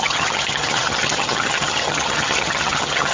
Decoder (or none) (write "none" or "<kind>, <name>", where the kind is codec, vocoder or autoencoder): vocoder, HiFi-GAN